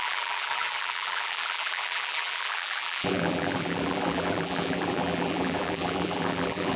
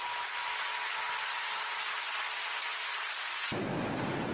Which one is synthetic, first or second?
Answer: first